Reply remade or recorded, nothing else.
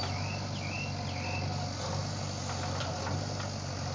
recorded